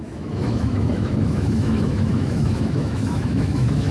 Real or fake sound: fake